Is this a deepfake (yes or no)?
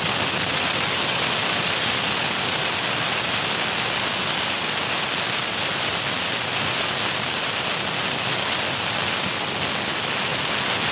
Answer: no